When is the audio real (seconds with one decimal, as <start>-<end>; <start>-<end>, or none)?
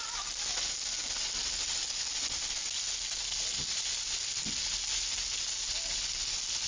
0.0-6.7